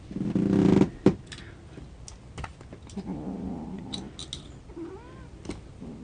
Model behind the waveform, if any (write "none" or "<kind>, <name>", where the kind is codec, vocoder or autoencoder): none